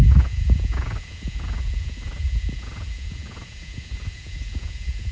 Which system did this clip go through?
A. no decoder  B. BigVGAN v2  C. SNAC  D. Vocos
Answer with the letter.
D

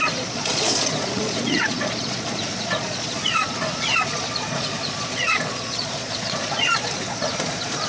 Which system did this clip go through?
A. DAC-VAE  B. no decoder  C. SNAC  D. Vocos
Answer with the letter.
D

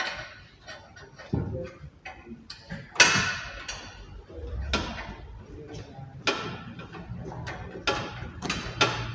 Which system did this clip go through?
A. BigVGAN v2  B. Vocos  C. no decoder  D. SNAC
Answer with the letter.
C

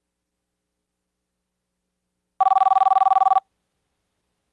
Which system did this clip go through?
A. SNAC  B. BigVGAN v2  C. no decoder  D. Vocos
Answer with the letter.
C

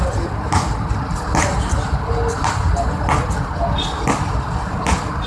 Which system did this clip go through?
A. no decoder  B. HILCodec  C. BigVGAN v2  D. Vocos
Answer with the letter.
A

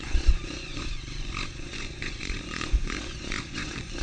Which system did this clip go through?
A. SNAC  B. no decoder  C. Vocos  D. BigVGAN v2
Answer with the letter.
C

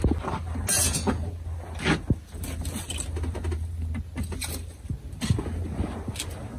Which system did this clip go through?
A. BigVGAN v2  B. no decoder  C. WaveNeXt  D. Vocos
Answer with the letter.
B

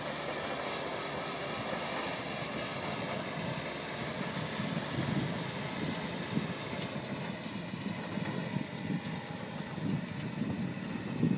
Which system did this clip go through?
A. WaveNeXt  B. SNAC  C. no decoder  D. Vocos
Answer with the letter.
C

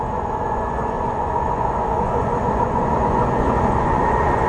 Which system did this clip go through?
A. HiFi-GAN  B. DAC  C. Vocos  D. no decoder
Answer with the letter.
C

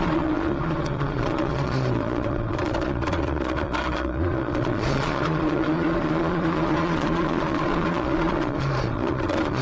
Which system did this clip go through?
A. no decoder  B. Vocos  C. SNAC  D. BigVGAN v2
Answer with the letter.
B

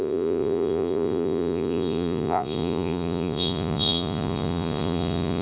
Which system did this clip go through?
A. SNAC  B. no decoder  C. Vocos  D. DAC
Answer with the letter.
C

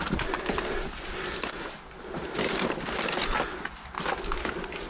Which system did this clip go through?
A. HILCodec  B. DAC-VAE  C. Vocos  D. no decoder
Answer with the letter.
D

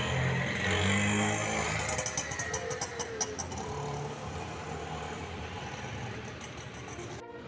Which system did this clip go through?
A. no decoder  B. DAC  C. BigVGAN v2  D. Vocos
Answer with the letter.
A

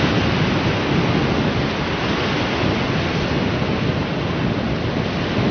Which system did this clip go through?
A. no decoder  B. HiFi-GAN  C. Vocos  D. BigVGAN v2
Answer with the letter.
A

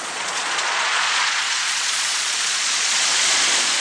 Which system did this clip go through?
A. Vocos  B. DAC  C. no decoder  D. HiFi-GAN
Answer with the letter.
A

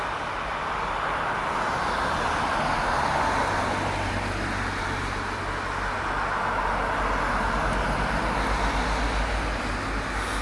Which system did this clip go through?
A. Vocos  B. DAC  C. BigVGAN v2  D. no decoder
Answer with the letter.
D